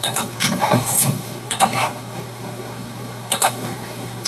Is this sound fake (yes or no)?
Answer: yes